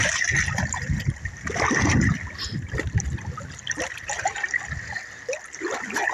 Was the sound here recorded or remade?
recorded